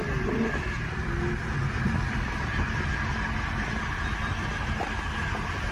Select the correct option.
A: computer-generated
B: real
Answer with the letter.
B